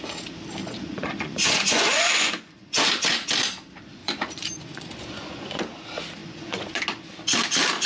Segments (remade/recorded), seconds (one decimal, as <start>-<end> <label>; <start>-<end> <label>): 0.0-0.6 recorded; 0.6-2.9 remade; 2.9-4.0 recorded; 4.0-5.6 remade; 5.6-6.2 recorded; 6.2-6.8 remade; 6.8-7.9 recorded